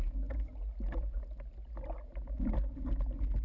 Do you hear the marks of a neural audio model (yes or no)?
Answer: no